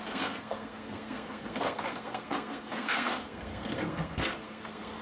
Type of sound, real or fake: fake